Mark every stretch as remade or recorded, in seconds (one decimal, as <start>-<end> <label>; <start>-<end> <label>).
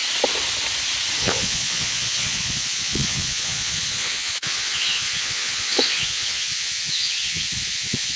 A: 0.0-1.2 recorded; 1.2-8.2 remade